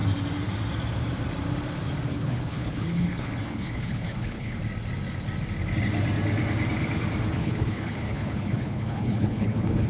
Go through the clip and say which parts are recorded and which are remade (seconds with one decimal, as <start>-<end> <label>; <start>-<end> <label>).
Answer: 0.0-2.1 recorded; 2.1-4.6 remade; 4.6-7.4 recorded; 7.4-9.9 remade